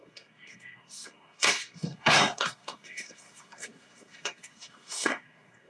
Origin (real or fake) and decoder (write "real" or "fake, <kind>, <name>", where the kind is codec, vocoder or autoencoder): fake, codec, SNAC